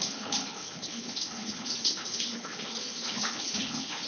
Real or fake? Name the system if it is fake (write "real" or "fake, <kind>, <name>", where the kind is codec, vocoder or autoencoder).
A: fake, codec, HILCodec